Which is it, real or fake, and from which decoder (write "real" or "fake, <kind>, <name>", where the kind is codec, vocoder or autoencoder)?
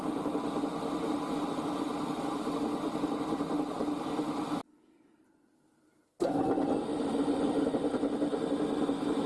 real